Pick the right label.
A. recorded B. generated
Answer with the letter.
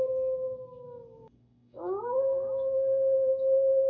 B